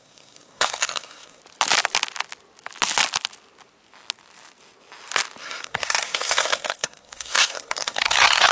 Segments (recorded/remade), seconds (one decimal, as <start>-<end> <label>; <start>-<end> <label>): 0.0-1.4 remade; 1.4-5.4 recorded; 5.4-8.5 remade